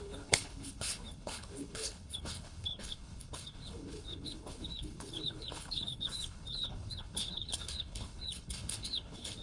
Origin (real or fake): fake